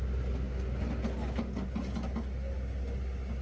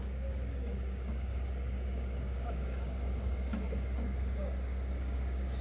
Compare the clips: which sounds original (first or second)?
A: first